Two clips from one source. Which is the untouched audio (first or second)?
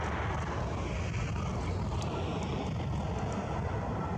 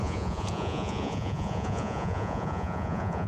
first